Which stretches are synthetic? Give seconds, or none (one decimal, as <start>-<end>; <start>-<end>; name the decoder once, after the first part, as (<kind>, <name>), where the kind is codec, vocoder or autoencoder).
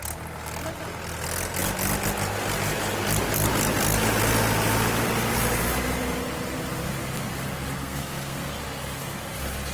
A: 7.8-8.5 (codec, SNAC)